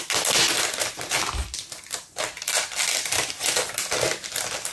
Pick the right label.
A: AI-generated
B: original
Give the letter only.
B